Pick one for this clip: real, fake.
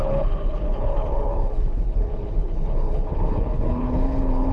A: fake